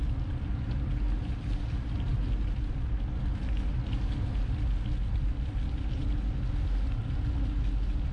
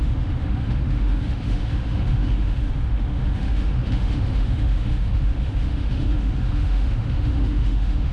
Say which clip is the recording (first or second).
first